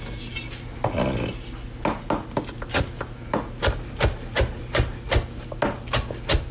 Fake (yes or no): no